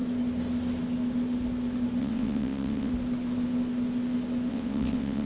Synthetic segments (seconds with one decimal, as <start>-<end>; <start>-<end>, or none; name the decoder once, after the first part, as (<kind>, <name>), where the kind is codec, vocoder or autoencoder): 2.0-2.9 (vocoder, WaveNeXt); 4.5-5.3